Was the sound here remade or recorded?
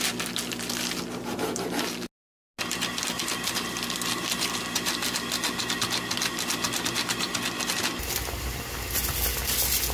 recorded